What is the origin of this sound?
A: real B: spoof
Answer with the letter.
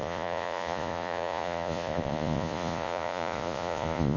B